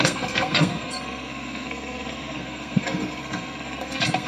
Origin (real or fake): fake